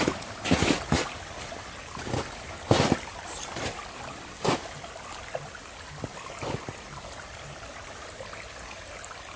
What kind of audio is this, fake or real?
real